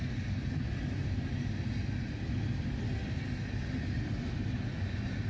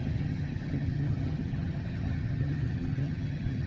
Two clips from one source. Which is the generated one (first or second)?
second